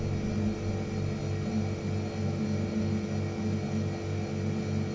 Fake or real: real